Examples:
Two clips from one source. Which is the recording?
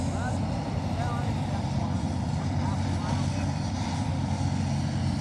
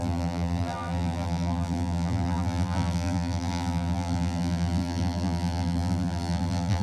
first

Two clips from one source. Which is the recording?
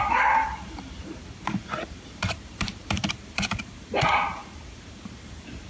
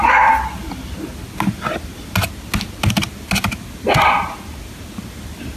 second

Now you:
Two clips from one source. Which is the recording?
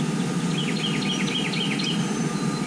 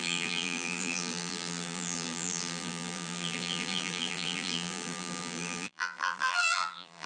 first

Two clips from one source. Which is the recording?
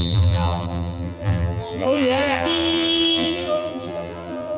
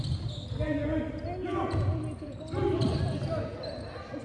second